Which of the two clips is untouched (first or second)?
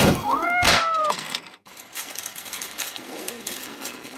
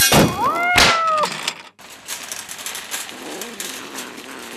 second